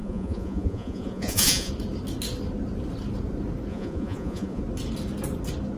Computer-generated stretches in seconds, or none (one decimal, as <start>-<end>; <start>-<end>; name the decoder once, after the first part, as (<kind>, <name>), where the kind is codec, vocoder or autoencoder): 0.0-1.7 (vocoder, Vocos); 3.7-4.6

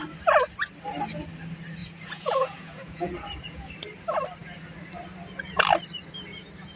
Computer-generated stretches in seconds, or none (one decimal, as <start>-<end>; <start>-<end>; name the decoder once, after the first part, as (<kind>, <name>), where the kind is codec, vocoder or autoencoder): 1.8-3.7 (vocoder, Vocos)

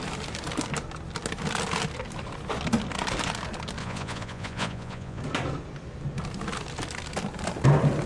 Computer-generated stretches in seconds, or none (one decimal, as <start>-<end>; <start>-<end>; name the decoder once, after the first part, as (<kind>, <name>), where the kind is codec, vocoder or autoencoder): 3.8-5.2 (vocoder, Vocos)

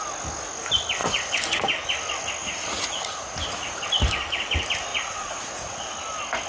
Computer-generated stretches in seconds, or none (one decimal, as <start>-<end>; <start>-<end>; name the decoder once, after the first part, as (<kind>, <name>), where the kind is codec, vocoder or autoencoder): 1.0-1.6 (vocoder, Vocos); 2.4-3.8; 4.9-5.9